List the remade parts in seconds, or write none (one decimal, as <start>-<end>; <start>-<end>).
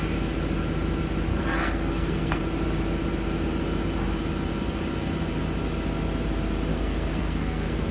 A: 1.3-2.4; 6.7-7.9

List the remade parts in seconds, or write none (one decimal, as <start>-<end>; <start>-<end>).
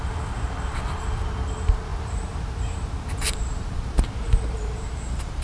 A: 1.9-5.4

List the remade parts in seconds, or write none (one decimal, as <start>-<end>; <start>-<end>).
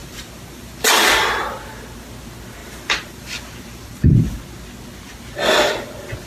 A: 0.0-1.0; 2.6-4.0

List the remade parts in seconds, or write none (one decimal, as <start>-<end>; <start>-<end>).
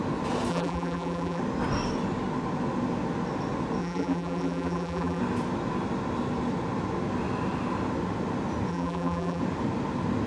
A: 0.5-1.4; 3.8-5.2; 8.7-9.4